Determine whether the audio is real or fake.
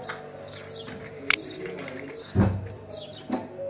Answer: real